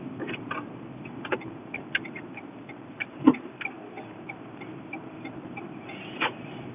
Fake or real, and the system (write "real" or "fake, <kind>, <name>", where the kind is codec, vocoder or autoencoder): fake, vocoder, BigVGAN v2